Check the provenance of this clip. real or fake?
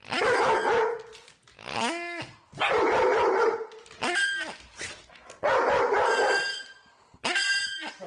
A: real